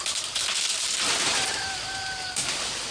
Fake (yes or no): no